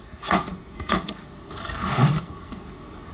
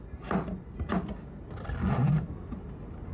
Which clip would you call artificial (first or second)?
first